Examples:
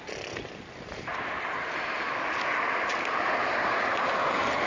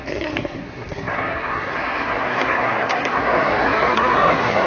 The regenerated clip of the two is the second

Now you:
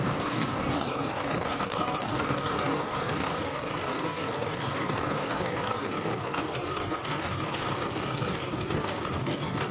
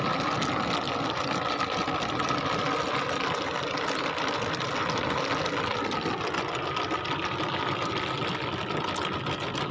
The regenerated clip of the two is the first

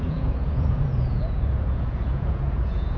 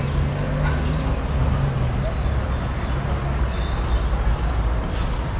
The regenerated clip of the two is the first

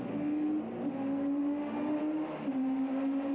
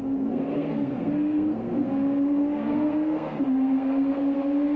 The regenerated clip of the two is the second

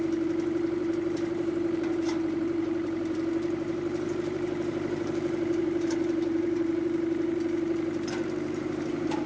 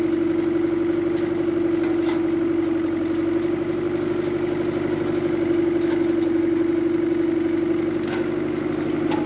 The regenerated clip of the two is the first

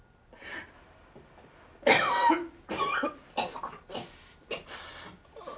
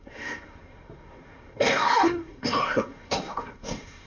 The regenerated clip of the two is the second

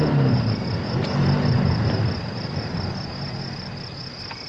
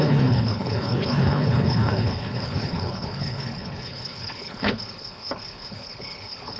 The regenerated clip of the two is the second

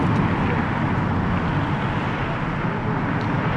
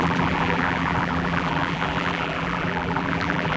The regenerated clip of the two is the second